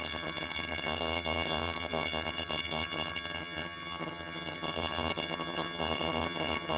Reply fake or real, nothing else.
fake